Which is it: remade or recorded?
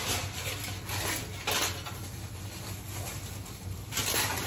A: recorded